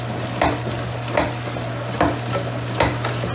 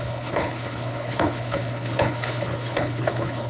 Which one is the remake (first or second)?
second